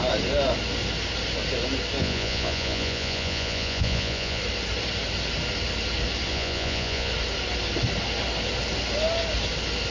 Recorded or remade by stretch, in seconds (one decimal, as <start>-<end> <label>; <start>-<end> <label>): 0.0-2.0 recorded; 2.0-4.4 remade; 4.4-6.3 recorded; 6.3-7.1 remade; 7.1-9.9 recorded